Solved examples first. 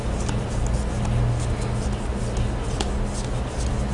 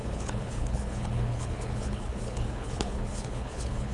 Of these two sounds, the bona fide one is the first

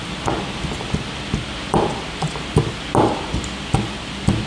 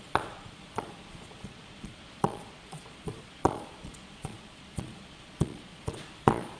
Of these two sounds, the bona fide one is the first